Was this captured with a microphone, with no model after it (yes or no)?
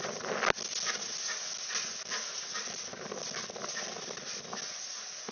yes